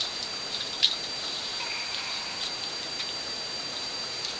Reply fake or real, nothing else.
fake